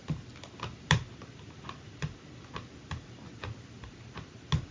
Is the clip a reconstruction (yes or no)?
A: no